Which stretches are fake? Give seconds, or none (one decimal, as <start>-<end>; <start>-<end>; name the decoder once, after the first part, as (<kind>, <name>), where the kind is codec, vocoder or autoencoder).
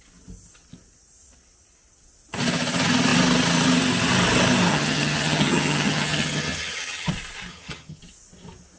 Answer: 4.7-7.1 (vocoder, HiFi-GAN); 7.5-8.0